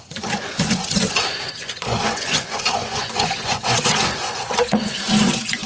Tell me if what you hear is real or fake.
fake